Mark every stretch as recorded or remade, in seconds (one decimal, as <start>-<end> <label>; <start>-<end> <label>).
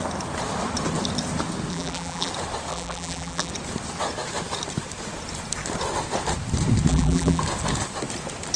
0.0-1.7 recorded; 1.7-2.3 remade; 2.3-2.7 recorded; 2.7-3.5 remade; 3.5-6.9 recorded; 6.9-7.4 remade; 7.4-8.6 recorded